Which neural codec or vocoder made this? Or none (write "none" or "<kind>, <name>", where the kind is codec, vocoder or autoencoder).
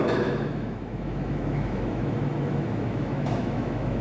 autoencoder, DAC-VAE